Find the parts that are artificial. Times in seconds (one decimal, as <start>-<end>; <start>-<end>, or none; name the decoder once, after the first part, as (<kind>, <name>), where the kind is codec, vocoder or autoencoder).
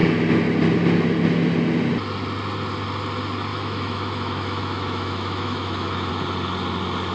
3.5-6.1 (autoencoder, DAC-VAE)